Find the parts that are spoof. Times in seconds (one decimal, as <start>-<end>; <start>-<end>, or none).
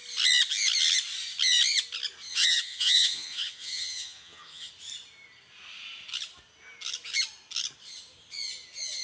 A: 2.3-4.7